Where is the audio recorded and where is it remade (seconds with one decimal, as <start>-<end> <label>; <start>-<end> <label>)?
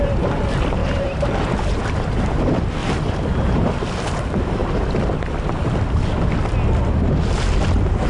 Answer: 0.0-0.8 recorded; 0.8-1.8 remade; 1.8-2.8 recorded; 2.8-3.7 remade; 3.7-8.1 recorded